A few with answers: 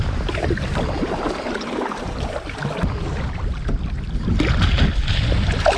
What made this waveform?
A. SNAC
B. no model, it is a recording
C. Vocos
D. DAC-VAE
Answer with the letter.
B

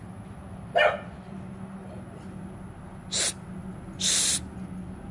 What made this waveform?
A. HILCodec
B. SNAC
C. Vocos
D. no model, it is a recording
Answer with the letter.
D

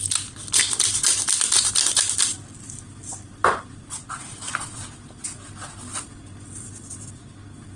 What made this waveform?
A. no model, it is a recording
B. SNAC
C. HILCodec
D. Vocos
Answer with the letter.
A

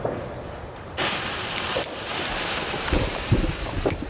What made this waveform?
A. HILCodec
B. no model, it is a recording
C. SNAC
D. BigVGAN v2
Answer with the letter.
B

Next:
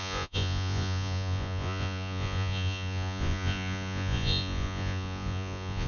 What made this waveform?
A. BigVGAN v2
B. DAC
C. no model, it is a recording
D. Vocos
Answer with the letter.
D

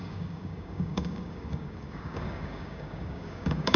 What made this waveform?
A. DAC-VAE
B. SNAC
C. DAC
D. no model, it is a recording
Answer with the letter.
C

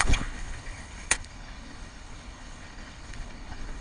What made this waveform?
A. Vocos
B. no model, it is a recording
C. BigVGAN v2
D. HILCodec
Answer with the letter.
D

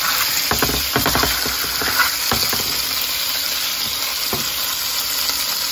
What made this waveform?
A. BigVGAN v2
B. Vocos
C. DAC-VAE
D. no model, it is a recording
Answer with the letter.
D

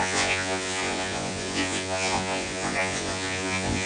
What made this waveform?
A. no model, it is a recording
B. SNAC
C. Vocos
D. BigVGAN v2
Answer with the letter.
C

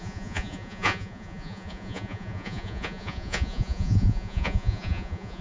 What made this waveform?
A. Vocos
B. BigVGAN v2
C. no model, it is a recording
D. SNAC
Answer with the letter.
A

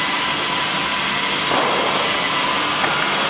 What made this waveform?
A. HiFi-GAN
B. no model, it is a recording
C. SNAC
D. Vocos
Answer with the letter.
B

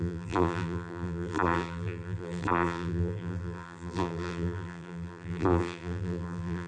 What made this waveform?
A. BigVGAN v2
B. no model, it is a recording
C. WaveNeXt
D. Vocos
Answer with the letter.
A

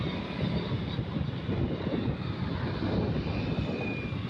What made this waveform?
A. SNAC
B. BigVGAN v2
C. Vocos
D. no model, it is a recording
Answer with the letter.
D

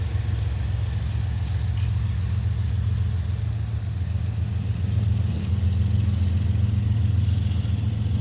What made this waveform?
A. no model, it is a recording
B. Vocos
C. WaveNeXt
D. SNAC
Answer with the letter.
A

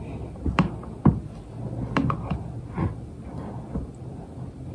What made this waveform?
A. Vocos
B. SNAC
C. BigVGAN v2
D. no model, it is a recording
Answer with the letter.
D